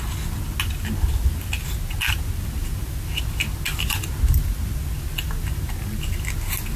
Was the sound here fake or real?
real